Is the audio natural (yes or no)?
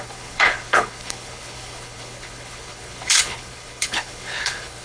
no